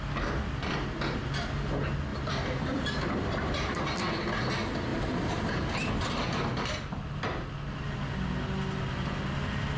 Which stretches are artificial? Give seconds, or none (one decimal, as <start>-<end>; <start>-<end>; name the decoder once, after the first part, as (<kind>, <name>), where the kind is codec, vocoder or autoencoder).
2.1-3.8 (vocoder, BigVGAN v2); 4.9-5.9